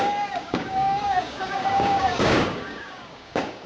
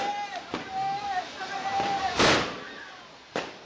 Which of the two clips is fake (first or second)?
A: first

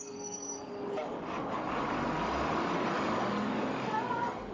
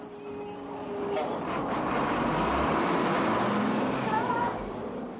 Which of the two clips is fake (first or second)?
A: first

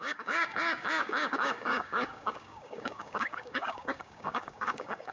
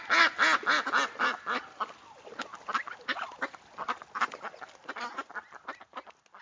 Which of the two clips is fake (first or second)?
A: first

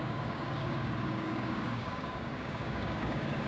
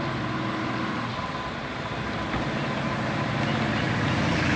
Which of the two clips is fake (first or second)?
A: first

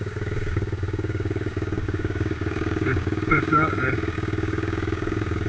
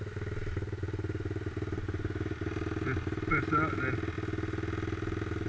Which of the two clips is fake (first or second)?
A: first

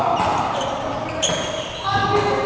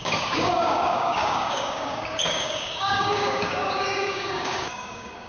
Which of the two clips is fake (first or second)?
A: second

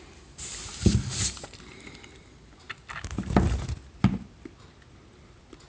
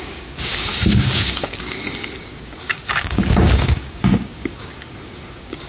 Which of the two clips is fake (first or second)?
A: second